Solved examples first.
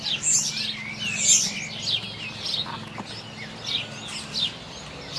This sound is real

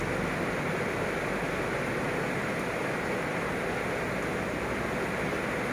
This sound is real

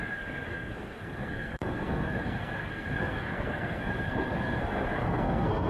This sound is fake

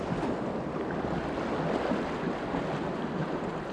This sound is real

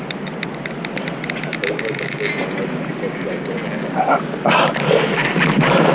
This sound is real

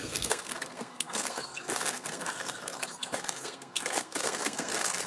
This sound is fake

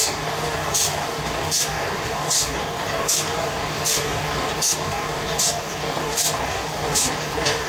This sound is fake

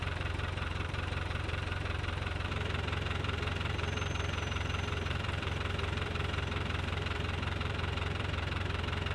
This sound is fake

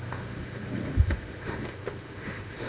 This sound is fake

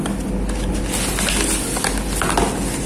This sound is real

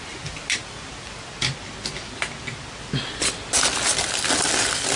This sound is real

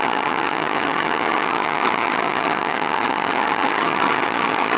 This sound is fake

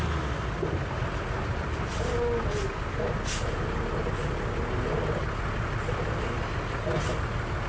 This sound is real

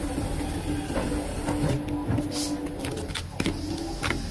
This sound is real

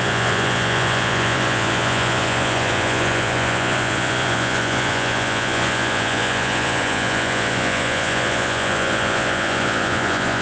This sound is fake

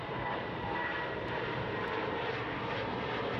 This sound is fake